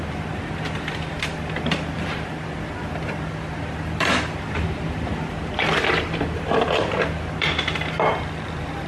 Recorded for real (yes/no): no